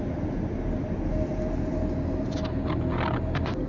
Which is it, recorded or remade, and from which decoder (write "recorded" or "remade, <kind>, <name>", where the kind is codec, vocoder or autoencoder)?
recorded